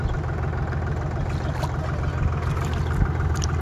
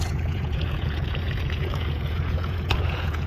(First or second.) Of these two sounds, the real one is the first